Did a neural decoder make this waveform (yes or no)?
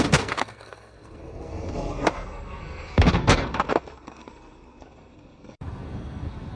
yes